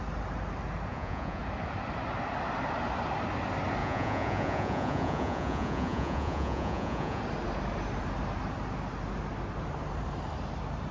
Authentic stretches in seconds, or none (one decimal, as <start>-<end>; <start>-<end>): 0.0-0.9; 1.4-3.8; 7.2-10.9